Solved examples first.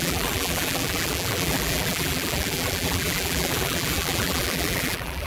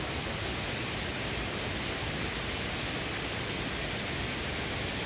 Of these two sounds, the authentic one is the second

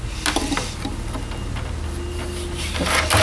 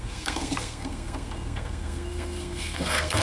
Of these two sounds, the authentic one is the first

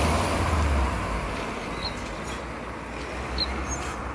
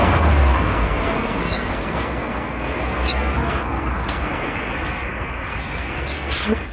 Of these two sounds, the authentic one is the first